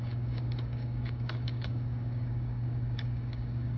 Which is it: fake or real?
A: fake